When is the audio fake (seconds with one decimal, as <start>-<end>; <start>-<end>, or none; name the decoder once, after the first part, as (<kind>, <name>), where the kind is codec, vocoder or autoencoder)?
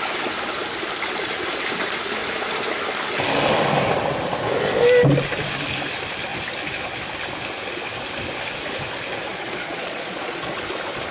9.3-10.5 (vocoder, Vocos)